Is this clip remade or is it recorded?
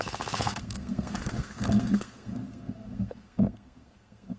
remade